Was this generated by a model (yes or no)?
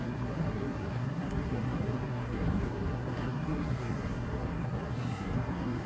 yes